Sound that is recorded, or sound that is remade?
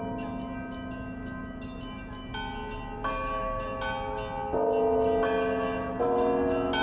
recorded